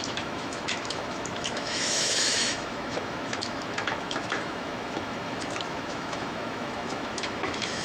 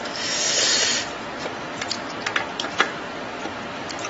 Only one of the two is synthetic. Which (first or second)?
first